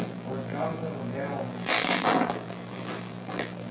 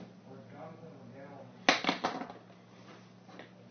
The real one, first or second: second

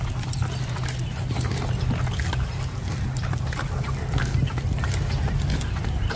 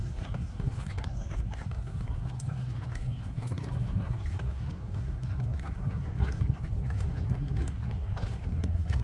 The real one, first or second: first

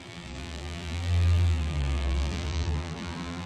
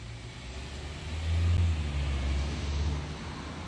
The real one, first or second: second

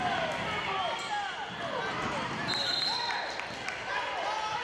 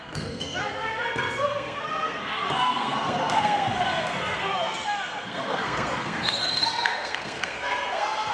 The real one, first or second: first